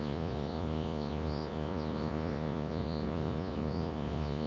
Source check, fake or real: fake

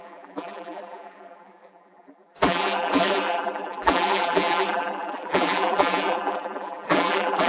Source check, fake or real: fake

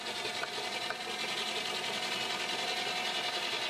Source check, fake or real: real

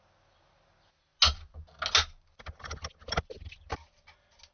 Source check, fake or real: real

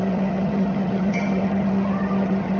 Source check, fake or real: fake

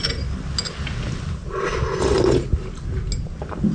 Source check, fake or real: real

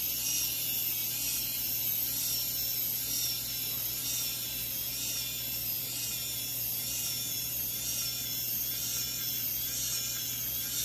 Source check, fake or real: real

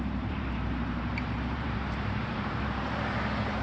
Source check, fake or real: fake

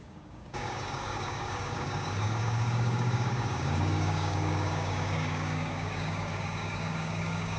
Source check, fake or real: fake